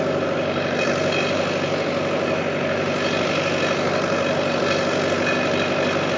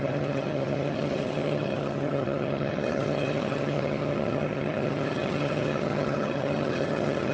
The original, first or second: first